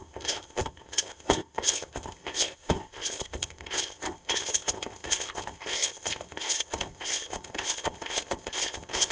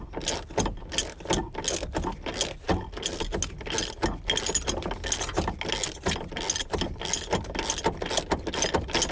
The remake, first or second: first